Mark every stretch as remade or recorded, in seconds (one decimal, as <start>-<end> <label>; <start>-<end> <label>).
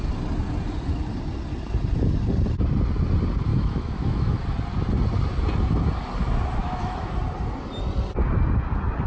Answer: 0.0-3.5 recorded; 3.5-4.4 remade; 4.4-6.6 recorded; 6.6-7.1 remade; 7.1-9.1 recorded